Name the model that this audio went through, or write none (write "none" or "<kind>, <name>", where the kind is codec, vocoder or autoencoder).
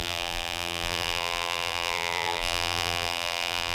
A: vocoder, BigVGAN v2